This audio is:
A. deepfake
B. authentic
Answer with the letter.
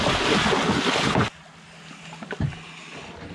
B